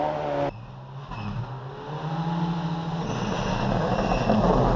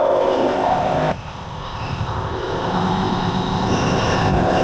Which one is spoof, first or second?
second